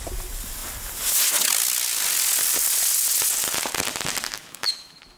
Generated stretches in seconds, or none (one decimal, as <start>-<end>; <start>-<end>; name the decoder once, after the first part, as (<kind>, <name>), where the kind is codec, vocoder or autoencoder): 4.4-5.2 (autoencoder, DAC-VAE)